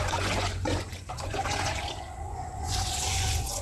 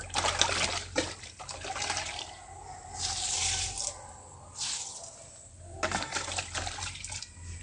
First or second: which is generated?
first